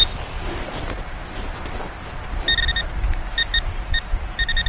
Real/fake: real